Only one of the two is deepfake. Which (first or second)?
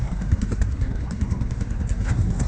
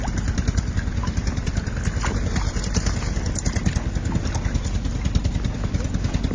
first